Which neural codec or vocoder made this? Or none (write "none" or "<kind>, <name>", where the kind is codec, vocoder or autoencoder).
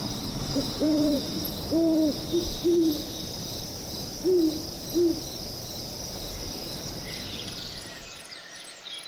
vocoder, BigVGAN v2